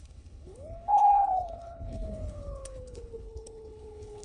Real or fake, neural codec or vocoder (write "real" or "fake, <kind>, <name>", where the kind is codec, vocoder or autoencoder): fake, codec, HILCodec